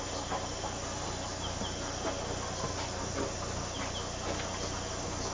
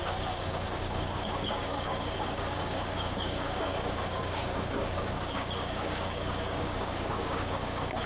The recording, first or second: first